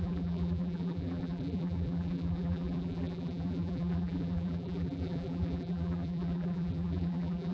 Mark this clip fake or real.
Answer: fake